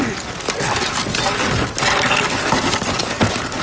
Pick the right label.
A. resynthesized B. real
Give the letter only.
B